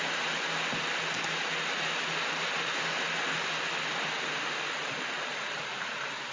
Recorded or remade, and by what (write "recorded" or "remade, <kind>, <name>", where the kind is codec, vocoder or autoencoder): recorded